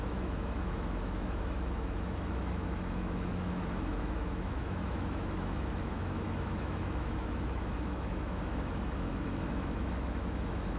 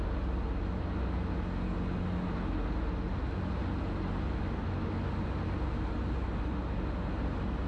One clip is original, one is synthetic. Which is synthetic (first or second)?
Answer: first